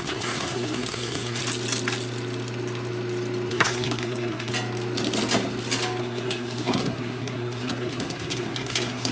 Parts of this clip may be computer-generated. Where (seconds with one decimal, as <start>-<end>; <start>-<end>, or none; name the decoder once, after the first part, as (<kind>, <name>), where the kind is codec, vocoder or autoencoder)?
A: 0.0-1.4 (codec, SNAC); 3.5-4.5; 6.0-9.1